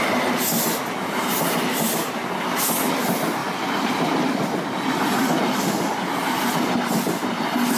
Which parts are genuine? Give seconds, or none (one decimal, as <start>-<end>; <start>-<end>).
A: 0.0-7.8

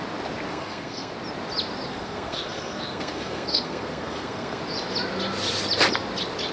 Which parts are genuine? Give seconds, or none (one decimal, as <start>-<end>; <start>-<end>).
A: 0.0-0.5; 1.1-1.9; 4.6-6.5

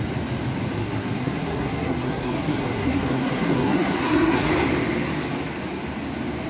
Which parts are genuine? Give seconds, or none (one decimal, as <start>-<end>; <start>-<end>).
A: 0.0-0.8; 4.5-6.5